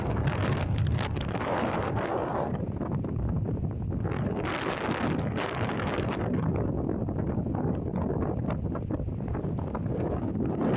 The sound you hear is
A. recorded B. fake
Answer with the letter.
A